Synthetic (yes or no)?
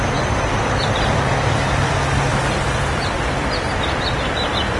yes